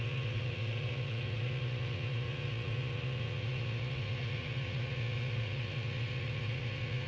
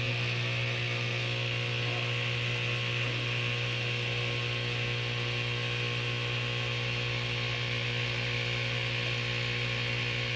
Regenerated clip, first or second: first